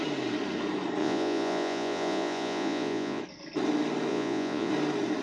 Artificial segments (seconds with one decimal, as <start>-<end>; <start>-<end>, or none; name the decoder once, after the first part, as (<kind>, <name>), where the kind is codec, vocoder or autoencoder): 1.0-3.2 (vocoder, Vocos); 4.1-4.7